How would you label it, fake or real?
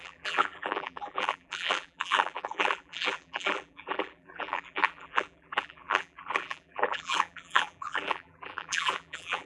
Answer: fake